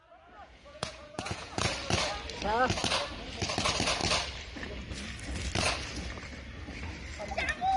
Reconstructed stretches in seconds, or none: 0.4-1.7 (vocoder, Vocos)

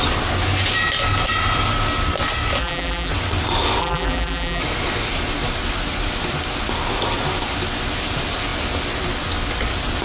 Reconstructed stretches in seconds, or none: 2.6-3.1 (vocoder, BigVGAN v2); 3.8-4.6

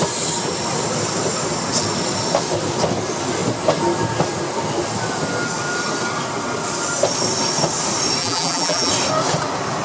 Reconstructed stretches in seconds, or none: 8.2-8.9 (vocoder, BigVGAN v2)

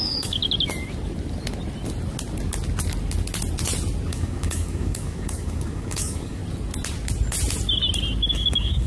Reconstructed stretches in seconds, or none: 0.0-0.4 (codec, DAC); 4.1-6.4; 8.3-8.9